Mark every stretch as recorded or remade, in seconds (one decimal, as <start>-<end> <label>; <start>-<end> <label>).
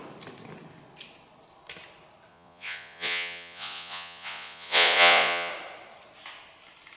0.0-2.3 recorded; 2.3-5.5 remade; 5.5-7.0 recorded